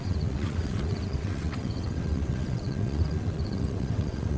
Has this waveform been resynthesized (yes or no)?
yes